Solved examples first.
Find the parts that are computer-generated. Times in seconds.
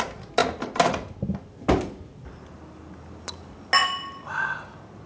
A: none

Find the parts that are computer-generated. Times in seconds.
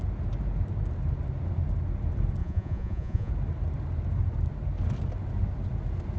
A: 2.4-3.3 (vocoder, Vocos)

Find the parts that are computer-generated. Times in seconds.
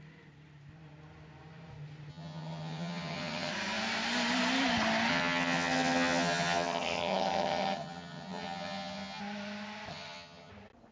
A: 2.1-3.5 (vocoder, HiFi-GAN); 5.1-9.2; 9.9-10.5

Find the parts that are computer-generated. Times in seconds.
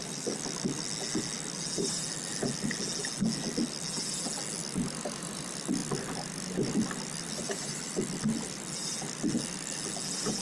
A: 5.8-8.2 (vocoder, BigVGAN v2)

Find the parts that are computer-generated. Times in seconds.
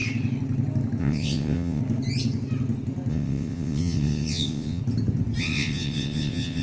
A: 1.0-1.8 (vocoder, WaveNeXt); 3.1-4.8; 5.4-6.6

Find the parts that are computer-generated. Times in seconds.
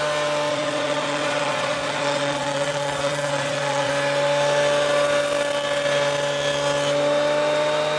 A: 0.5-3.9 (vocoder, Vocos)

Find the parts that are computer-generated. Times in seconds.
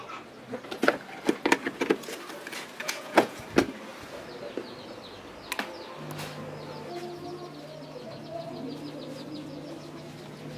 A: 2.8-3.4 (vocoder, Vocos)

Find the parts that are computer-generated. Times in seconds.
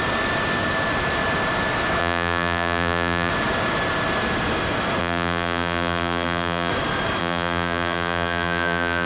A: 2.0-3.3 (vocoder, BigVGAN v2); 5.0-6.7; 7.2-9.1